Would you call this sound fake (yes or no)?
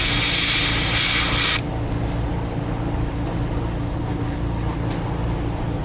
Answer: no